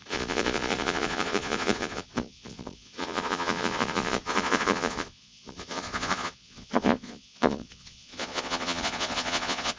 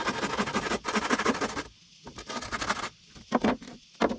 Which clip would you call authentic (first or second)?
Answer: second